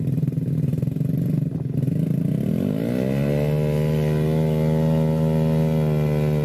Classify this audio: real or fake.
real